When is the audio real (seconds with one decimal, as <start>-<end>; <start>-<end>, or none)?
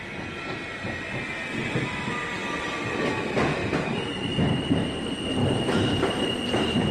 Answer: 0.0-3.6; 4.7-5.4; 6.0-6.9